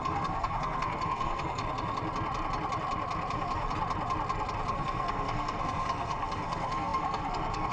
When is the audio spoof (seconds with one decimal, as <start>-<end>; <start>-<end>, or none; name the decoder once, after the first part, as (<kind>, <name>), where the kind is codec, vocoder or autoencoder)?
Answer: 0.0-1.6 (codec, SNAC); 4.7-7.7

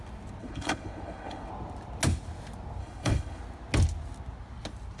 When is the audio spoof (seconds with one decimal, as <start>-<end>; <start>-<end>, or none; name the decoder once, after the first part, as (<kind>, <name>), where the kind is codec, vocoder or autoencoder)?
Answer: 0.4-1.5 (codec, HILCodec); 2.8-3.4

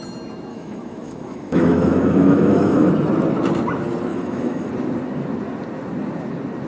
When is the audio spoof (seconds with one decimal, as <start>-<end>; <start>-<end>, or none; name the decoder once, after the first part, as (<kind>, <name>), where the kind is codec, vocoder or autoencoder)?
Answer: 0.5-2.9 (autoencoder, DAC-VAE); 4.1-4.7

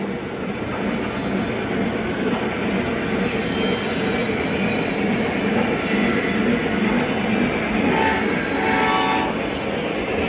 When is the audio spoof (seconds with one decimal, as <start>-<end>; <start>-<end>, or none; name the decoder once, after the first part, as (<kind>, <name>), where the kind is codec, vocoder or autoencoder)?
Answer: 4.2-6.1 (vocoder, BigVGAN v2)

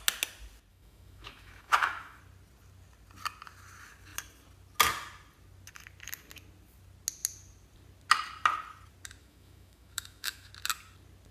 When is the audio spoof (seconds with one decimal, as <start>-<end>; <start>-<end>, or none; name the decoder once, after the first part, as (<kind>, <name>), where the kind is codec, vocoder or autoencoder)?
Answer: 0.7-2.2 (autoencoder, DAC-VAE); 9.2-10.5